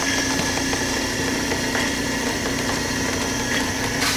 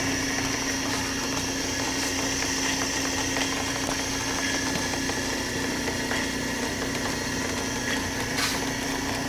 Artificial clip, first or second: first